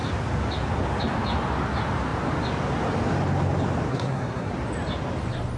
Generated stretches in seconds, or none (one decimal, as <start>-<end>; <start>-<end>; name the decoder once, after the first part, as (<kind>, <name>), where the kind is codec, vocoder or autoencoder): 3.9-4.5 (codec, SNAC)